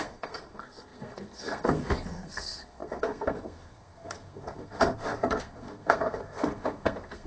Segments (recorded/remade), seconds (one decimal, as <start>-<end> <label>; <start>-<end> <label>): 0.0-7.3 remade